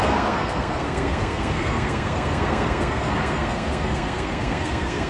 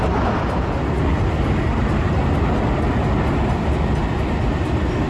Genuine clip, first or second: second